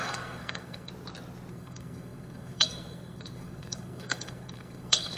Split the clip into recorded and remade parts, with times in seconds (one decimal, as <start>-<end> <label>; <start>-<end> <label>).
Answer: 0.0-0.9 remade; 0.9-1.5 recorded; 1.5-5.2 remade